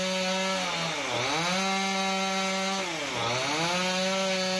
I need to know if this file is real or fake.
real